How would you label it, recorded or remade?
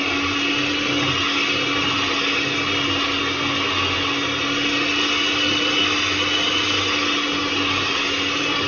recorded